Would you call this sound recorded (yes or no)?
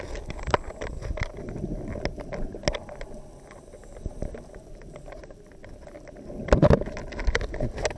yes